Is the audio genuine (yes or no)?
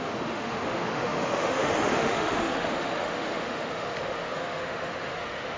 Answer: no